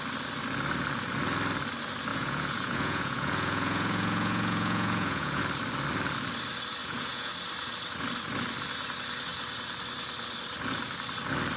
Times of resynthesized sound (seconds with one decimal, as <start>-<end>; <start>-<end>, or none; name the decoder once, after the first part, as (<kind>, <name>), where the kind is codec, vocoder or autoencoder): 2.1-5.4 (vocoder, Vocos); 6.8-7.3